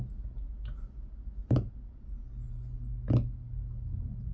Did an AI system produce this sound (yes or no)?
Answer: no